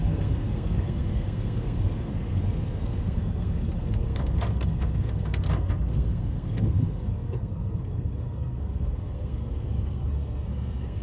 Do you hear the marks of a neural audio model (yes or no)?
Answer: yes